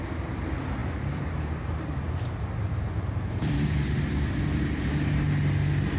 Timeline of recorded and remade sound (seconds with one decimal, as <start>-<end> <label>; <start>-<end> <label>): 0.0-0.8 recorded; 0.8-4.0 remade; 4.0-6.0 recorded